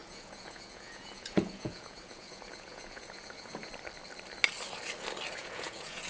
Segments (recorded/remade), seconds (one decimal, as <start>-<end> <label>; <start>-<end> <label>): 0.0-3.7 remade; 3.7-5.4 recorded; 5.4-6.1 remade